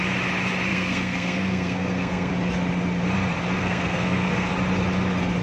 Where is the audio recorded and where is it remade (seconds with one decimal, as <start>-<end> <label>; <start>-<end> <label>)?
0.0-0.7 recorded; 0.7-2.3 remade; 2.3-3.6 recorded; 3.6-4.5 remade; 4.5-5.4 recorded